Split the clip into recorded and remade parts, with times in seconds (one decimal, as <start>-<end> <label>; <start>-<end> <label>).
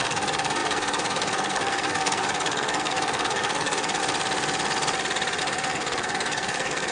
0.0-4.0 remade; 4.0-5.4 recorded; 5.4-6.9 remade